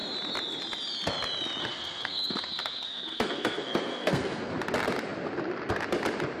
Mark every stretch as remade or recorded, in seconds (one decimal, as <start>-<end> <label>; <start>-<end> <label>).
0.0-1.6 recorded; 1.6-4.5 remade; 4.5-6.4 recorded